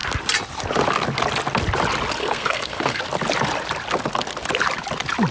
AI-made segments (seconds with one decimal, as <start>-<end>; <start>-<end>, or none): 2.2-3.0